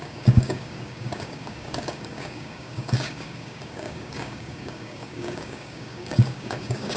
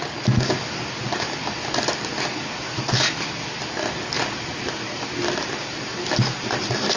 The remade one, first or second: first